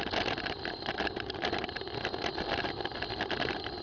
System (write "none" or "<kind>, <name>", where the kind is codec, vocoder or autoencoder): none